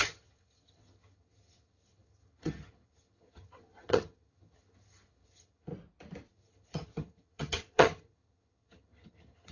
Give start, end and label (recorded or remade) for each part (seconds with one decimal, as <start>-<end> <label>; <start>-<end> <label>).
0.0-5.7 remade; 5.7-6.3 recorded; 6.3-9.5 remade